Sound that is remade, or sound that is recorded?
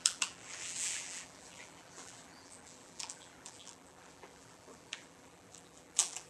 remade